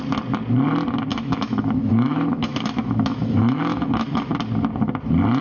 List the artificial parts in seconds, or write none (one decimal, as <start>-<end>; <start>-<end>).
1.1-4.3